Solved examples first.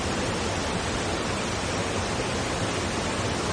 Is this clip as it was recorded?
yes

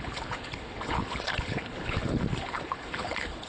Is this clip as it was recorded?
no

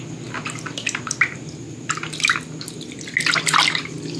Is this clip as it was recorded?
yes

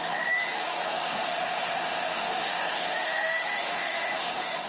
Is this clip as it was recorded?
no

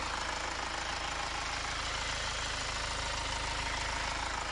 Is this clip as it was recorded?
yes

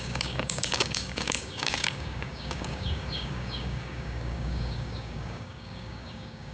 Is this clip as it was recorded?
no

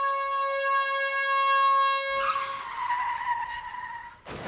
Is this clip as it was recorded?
yes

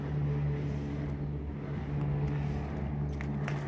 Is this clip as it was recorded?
yes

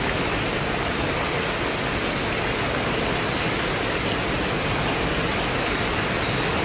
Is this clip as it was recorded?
yes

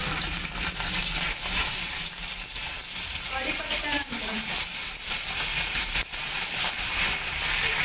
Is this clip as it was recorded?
no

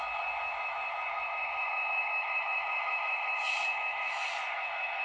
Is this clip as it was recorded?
no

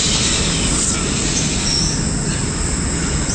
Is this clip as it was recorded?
yes